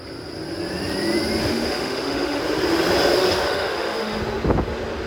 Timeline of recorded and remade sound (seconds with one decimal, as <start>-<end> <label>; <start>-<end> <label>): 0.0-1.4 recorded; 1.4-2.4 remade; 2.4-3.1 recorded; 3.1-4.2 remade; 4.2-5.1 recorded